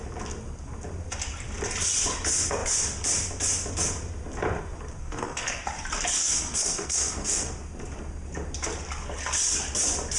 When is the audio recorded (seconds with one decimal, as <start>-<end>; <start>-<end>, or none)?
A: 0.0-5.0; 5.6-6.2; 7.5-10.2